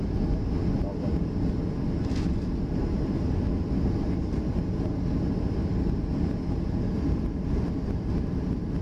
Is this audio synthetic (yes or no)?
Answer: no